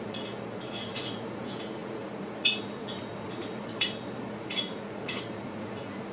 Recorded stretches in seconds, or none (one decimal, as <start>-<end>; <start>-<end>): none